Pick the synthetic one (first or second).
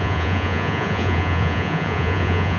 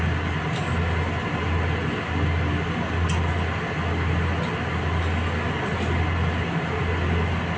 first